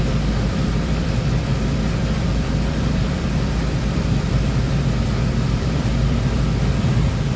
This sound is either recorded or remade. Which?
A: remade